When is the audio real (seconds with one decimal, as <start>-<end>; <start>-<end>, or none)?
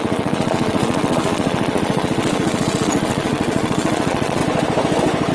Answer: 4.4-5.3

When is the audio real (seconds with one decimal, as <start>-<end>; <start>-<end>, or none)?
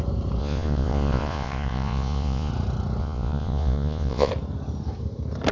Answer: 0.0-0.4; 2.5-3.0; 4.3-5.5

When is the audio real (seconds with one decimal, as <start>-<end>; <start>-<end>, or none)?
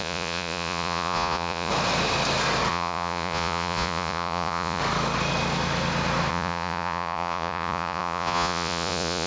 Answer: 1.7-2.7; 4.8-6.3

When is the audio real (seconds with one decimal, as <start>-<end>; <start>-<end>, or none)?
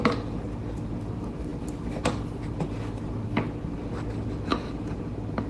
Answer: 0.0-4.5; 5.0-5.5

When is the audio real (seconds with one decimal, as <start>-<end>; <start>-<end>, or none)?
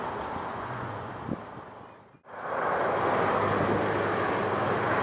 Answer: 0.0-0.5; 1.1-5.0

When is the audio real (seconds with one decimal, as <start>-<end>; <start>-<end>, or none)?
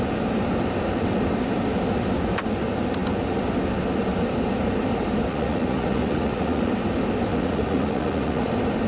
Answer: 0.0-5.3; 6.7-7.3; 8.5-8.9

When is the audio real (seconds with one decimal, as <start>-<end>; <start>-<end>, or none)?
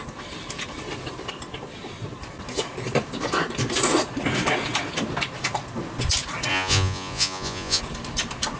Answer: 0.0-6.5; 7.8-8.6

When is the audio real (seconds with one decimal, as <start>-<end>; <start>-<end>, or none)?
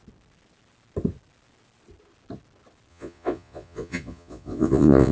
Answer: 0.0-2.9